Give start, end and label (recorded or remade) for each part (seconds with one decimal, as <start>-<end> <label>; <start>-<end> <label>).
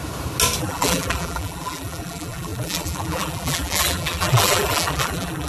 0.0-0.6 recorded; 0.6-5.5 remade